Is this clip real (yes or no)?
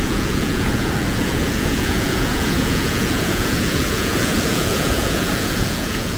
no